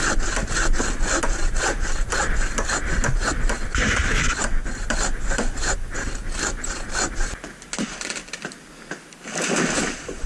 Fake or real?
real